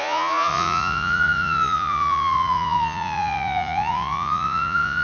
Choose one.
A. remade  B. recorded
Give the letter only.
A